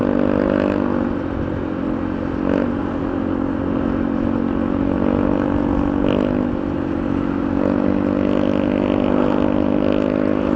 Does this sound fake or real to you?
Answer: real